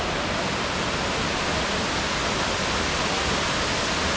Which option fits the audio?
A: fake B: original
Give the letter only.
B